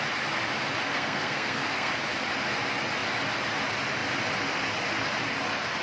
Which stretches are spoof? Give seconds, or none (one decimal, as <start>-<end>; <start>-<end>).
0.9-1.9